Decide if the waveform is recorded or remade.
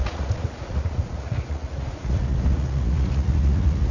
remade